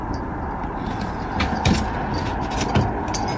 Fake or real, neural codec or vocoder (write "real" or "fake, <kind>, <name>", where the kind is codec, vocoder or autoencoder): real